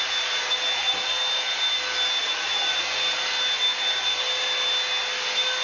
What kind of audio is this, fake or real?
real